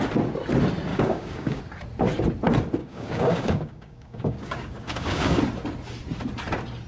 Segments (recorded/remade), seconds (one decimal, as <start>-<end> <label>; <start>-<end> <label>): 0.0-0.9 recorded; 0.9-1.6 remade; 1.6-2.8 recorded; 2.8-5.4 remade; 5.4-6.9 recorded